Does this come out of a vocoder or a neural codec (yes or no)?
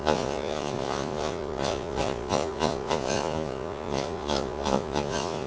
yes